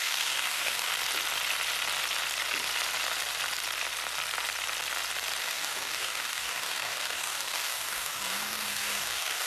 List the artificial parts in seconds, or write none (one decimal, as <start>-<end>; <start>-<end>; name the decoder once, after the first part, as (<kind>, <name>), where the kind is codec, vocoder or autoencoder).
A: 0.0-0.9 (codec, DAC); 5.4-9.5